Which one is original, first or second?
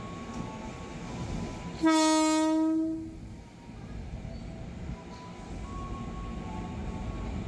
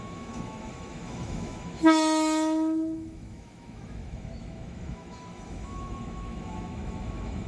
first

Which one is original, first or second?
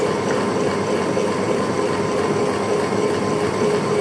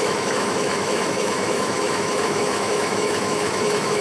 first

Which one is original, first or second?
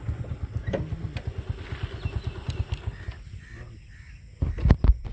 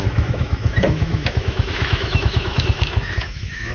first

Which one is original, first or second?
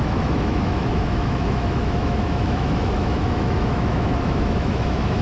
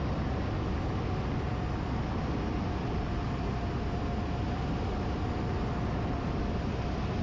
second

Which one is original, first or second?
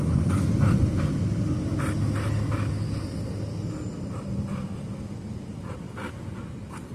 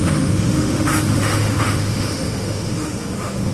first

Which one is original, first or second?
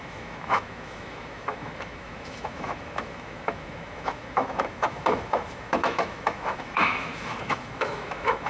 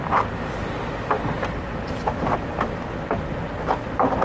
second